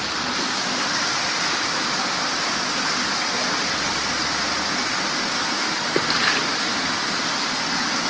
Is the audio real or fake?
real